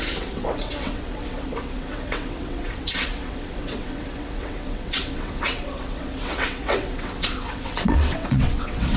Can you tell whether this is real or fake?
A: fake